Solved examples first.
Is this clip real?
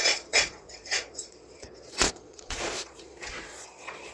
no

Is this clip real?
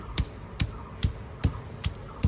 no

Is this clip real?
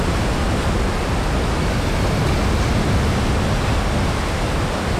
yes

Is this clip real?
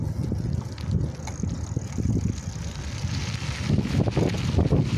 yes